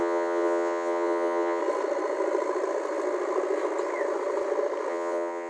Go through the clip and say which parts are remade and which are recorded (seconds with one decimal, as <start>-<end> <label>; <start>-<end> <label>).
0.0-1.6 remade; 1.6-4.9 recorded; 4.9-5.5 remade